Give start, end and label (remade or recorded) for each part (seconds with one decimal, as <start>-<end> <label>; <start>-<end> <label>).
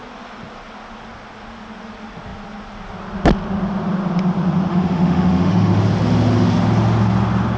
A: 0.0-4.7 recorded; 4.7-5.8 remade; 5.8-7.6 recorded